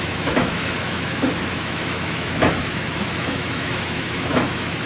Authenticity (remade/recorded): remade